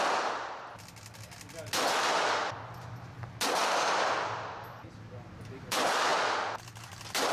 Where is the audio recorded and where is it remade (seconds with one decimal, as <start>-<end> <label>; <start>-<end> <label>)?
0.0-7.3 recorded